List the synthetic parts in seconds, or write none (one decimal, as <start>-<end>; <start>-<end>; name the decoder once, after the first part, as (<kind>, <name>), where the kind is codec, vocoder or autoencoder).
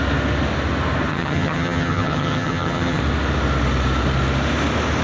1.1-3.0 (vocoder, HiFi-GAN)